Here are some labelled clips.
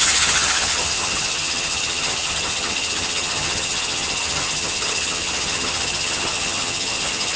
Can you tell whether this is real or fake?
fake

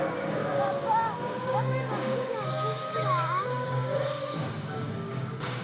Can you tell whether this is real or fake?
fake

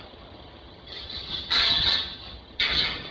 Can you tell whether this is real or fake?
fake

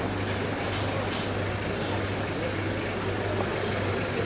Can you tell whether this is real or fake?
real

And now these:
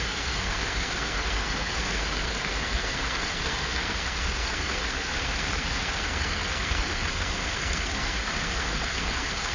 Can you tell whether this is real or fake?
fake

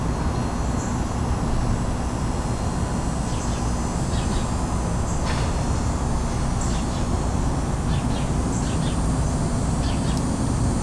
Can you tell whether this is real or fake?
real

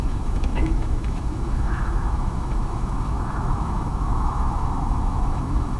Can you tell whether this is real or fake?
fake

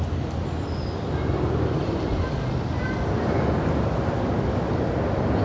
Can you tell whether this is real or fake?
real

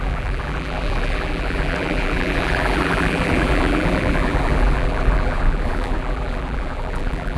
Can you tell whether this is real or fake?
fake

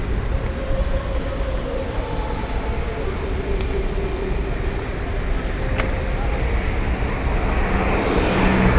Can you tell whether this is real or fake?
real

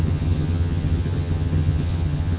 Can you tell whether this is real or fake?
fake